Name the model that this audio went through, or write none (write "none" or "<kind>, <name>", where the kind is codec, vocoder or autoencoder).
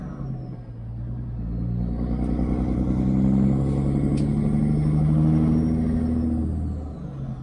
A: none